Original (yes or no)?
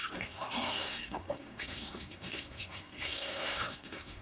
no